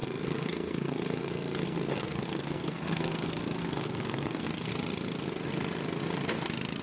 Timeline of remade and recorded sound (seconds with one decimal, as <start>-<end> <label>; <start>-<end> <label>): 0.0-4.7 remade; 4.7-6.8 recorded